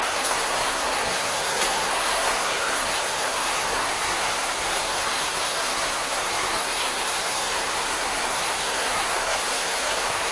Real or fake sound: fake